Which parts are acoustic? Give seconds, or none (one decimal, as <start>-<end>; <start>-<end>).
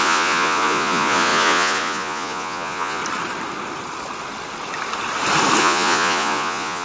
3.0-5.6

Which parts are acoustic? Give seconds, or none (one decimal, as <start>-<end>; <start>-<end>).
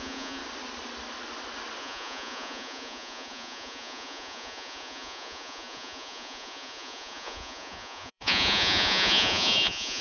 0.4-1.8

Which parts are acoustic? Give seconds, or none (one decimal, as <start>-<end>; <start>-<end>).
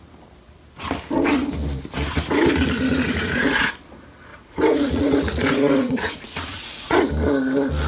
0.0-2.9; 3.7-4.3; 7.1-7.9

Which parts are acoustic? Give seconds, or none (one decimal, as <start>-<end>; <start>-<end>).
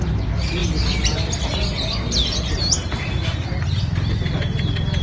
0.0-5.0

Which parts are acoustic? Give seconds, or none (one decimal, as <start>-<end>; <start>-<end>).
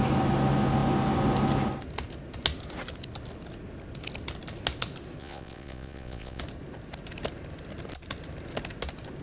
0.0-5.2; 6.4-9.2